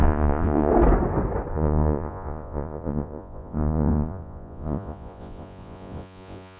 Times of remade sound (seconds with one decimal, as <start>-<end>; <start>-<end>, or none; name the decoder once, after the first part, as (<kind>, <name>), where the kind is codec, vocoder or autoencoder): 0.0-0.7 (vocoder, Vocos); 1.5-6.6